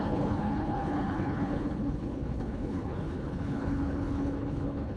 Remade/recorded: remade